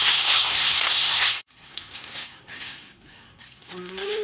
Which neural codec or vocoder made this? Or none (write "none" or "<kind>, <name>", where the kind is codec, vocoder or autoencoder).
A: codec, SNAC